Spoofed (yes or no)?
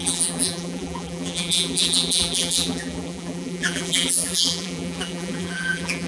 yes